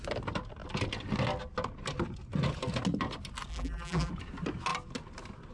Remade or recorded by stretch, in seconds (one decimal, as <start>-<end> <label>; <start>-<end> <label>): 0.0-3.5 recorded; 3.5-4.1 remade; 4.1-5.5 recorded